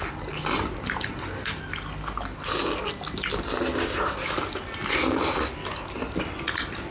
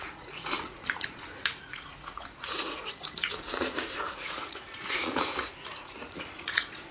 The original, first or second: first